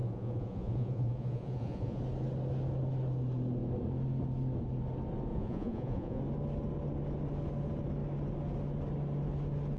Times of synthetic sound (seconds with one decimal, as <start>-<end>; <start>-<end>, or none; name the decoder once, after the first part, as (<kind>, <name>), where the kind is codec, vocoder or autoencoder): 0.0-2.0 (vocoder, Vocos); 5.3-6.2